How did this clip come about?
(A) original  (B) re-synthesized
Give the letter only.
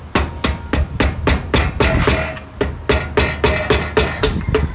A